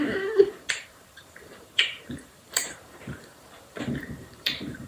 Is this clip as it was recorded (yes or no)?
no